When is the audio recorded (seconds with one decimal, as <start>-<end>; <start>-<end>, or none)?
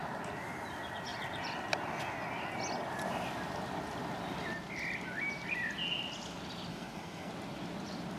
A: 0.0-6.7; 7.3-8.2